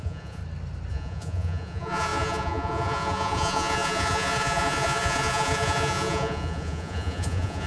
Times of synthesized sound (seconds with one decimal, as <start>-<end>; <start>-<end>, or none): 0.0-0.4; 0.9-7.7